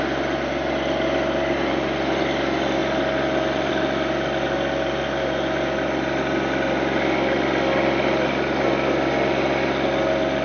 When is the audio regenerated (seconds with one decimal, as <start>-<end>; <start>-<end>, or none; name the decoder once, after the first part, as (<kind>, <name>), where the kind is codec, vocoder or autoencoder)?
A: none